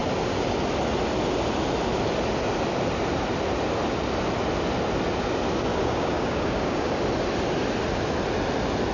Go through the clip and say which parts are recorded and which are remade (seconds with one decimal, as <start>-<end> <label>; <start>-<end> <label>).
0.0-5.7 recorded; 5.7-6.9 remade; 6.9-8.9 recorded